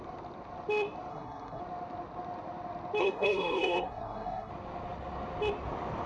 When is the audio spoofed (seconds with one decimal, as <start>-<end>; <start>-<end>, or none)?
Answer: 1.1-1.6; 3.0-4.5